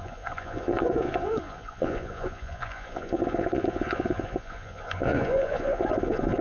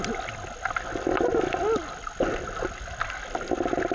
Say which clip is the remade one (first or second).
first